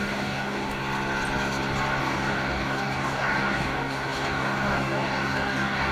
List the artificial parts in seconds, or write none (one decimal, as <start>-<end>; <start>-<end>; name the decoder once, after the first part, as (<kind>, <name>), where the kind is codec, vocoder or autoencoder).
0.0-0.8 (codec, DAC); 2.0-5.9